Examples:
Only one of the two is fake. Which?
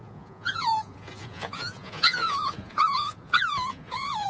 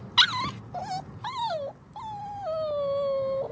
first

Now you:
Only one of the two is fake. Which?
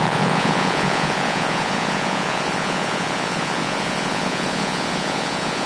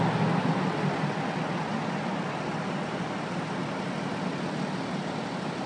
first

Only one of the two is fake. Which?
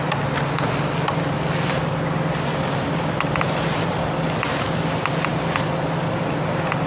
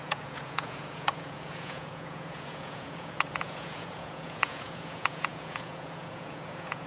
second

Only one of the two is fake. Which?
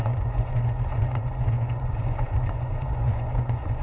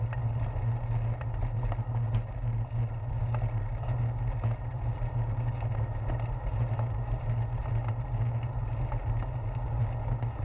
first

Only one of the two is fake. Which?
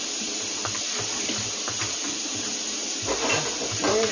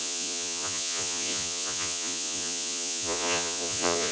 second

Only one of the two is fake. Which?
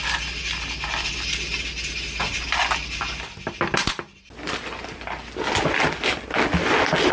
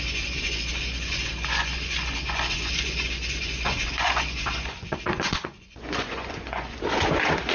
second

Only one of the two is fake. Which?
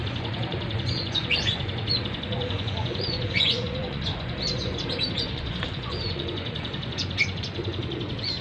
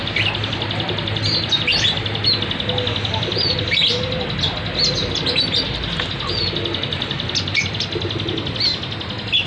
first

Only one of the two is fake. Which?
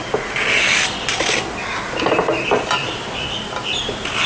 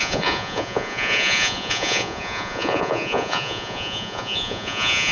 second